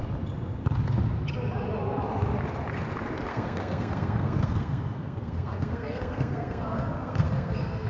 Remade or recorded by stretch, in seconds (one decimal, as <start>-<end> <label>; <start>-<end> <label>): 0.0-3.3 recorded; 3.3-7.9 remade

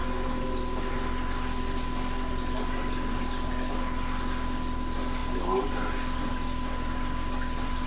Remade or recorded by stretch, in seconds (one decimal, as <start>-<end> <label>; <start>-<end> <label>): 0.0-7.9 recorded

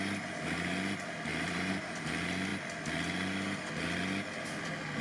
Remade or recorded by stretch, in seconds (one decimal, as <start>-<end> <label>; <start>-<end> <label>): 0.0-1.3 recorded; 1.3-2.1 remade; 2.1-5.0 recorded